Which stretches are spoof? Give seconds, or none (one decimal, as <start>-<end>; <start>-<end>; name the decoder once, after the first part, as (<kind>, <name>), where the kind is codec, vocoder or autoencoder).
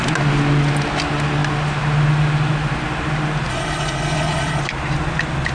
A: 3.5-4.6 (codec, HILCodec)